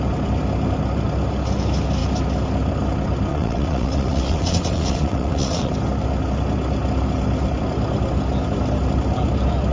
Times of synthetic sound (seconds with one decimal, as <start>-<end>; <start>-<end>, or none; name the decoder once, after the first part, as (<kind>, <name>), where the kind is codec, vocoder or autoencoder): 3.3-5.7 (vocoder, WaveNeXt)